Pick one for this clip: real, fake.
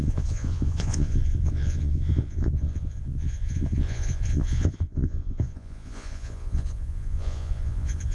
fake